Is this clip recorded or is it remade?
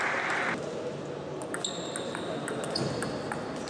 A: recorded